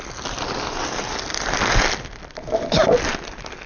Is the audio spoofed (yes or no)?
no